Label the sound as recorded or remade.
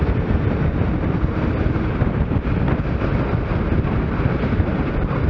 recorded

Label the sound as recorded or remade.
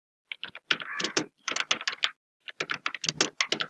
recorded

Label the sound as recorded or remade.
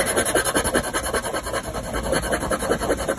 recorded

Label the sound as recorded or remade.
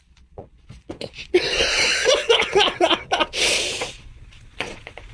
remade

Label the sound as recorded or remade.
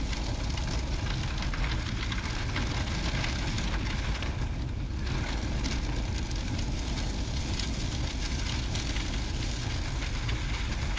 recorded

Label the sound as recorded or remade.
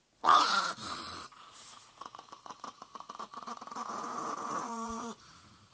remade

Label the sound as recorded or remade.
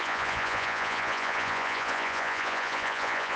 remade